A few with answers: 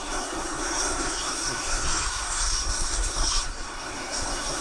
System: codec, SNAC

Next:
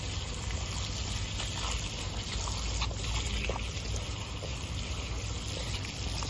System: none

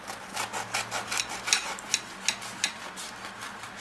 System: none